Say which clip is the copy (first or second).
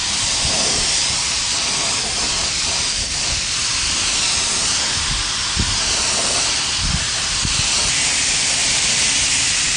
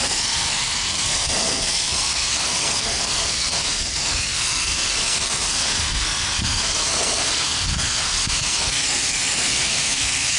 second